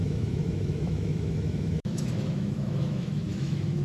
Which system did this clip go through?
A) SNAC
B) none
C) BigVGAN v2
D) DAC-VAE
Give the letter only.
D